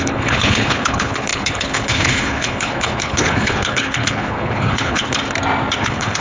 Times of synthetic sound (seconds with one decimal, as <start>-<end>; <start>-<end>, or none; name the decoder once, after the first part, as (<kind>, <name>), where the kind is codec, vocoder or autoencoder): 0.0-5.2 (codec, HILCodec); 5.8-6.2